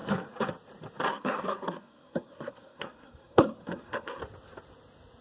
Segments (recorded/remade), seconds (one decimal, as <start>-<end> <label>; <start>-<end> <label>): 0.0-1.1 recorded; 1.1-4.2 remade; 4.2-5.2 recorded